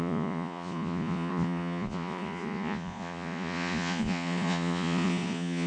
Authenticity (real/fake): fake